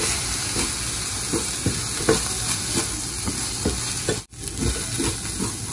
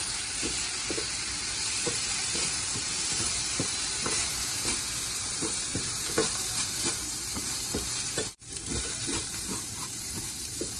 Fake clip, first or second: second